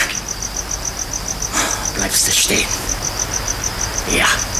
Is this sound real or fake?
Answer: real